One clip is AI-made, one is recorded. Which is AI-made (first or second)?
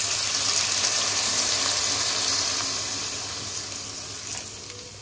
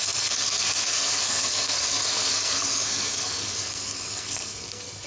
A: second